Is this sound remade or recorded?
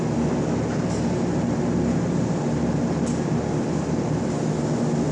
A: recorded